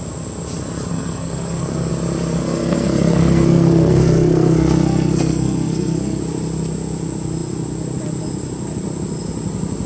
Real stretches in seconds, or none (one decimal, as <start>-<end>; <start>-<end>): 0.0-0.9; 1.9-2.4; 6.2-9.9